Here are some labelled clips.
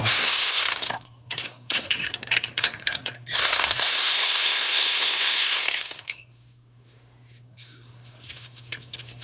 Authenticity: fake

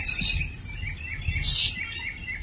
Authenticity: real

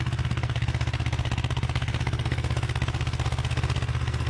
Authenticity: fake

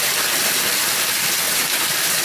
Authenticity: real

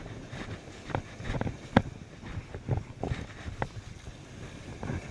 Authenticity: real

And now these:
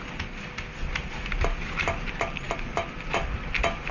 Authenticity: real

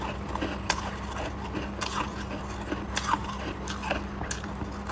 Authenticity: real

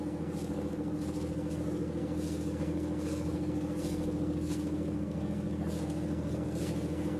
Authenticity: fake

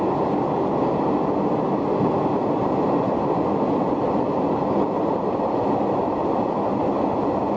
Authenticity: real